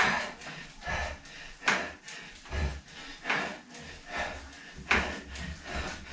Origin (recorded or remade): recorded